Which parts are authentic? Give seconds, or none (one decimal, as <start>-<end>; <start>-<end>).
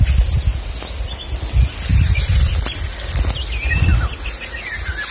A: 0.0-1.9; 2.5-3.9; 4.6-5.1